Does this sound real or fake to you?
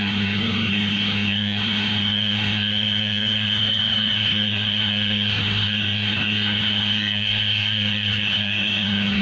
fake